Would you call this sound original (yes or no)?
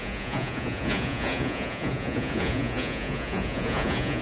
no